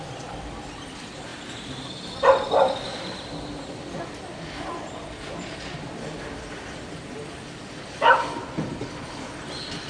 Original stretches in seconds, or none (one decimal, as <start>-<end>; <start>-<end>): 0.0-9.9